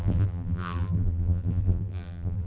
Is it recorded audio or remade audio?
remade